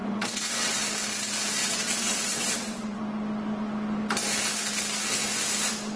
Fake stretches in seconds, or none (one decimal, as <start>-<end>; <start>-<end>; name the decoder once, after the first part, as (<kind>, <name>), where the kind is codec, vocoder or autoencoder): 0.0-0.8 (vocoder, WaveNeXt); 1.6-3.0